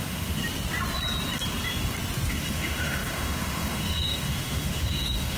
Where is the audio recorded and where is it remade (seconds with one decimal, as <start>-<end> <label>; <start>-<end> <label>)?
0.0-0.4 remade; 0.4-2.3 recorded; 2.3-5.4 remade